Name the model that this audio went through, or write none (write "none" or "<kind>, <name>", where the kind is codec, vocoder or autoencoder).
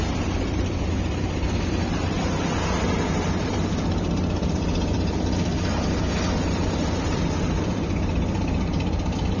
vocoder, BigVGAN v2